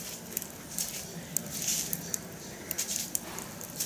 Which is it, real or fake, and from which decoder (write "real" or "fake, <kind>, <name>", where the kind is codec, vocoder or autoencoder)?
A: real